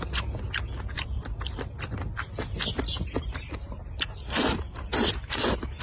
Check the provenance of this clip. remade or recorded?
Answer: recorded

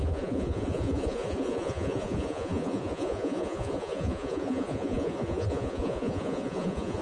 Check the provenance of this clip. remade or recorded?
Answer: remade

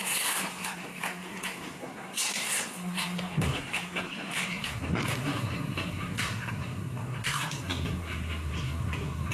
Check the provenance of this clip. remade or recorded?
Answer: remade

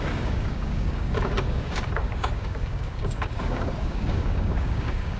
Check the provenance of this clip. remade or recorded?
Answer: remade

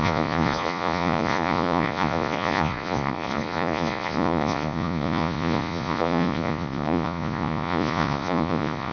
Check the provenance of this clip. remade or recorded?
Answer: remade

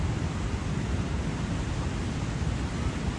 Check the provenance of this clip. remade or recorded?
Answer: recorded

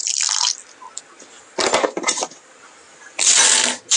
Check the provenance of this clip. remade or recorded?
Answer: recorded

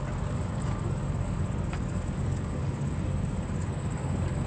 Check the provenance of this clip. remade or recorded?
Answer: remade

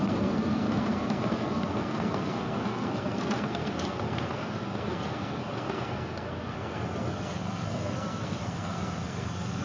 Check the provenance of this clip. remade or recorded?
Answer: remade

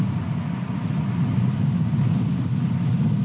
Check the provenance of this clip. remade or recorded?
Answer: recorded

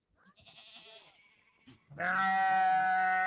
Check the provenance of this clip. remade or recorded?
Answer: recorded